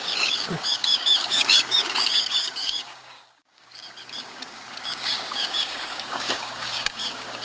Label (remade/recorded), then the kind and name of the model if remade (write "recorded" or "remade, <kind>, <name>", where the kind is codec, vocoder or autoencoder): remade, codec, DAC